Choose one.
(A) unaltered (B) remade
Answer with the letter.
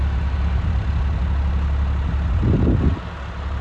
A